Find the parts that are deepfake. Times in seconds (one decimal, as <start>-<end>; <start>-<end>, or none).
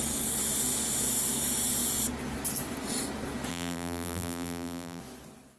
3.5-5.0